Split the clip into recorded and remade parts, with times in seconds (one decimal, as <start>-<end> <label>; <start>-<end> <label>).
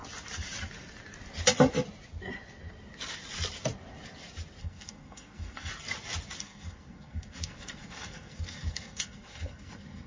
0.0-4.6 recorded; 4.6-5.7 remade; 5.7-6.4 recorded; 6.4-10.1 remade